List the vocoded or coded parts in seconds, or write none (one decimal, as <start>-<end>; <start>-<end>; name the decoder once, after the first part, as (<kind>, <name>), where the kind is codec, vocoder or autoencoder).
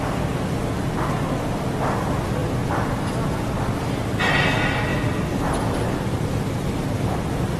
4.9-6.7 (vocoder, BigVGAN v2)